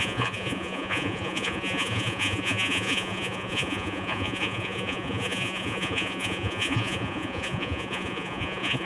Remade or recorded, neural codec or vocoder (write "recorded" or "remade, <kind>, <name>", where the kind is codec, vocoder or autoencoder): remade, vocoder, Vocos